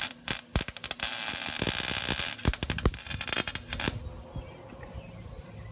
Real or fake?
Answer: real